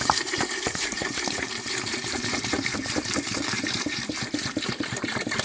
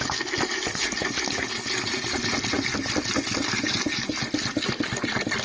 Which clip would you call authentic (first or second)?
second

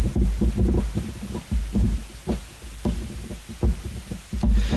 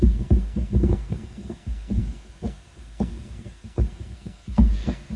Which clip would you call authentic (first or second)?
first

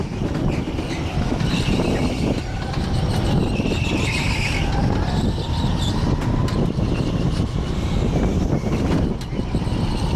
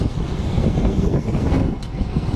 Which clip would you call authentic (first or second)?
first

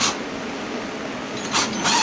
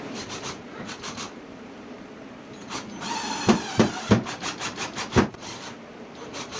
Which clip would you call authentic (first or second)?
first